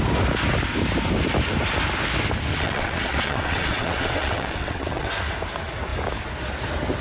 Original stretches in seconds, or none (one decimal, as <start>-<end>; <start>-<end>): 0.0-2.5; 5.1-7.0